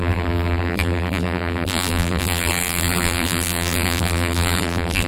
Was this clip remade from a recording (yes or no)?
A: yes